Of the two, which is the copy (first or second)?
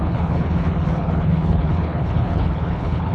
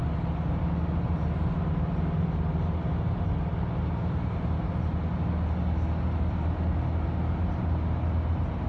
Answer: first